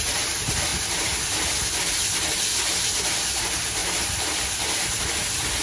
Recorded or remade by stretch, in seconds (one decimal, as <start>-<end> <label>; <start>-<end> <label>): 0.0-5.6 recorded